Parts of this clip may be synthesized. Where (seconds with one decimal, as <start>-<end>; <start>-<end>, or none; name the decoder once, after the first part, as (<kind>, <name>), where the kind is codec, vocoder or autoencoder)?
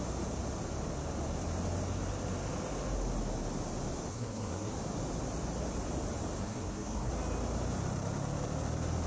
4.1-4.7 (codec, SNAC); 6.4-7.1